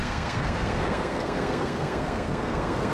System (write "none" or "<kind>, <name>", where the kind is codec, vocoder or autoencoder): codec, SNAC